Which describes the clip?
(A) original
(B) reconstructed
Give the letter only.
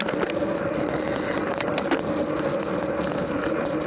A